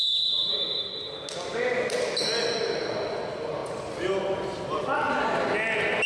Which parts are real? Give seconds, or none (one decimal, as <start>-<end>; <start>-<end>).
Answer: 0.0-6.1